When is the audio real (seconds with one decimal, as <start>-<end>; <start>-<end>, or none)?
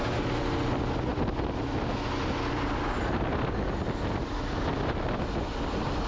0.0-6.1